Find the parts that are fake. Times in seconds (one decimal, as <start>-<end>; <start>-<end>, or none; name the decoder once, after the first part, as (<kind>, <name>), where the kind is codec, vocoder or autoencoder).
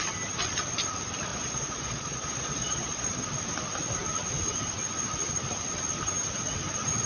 1.3-3.1 (vocoder, Vocos)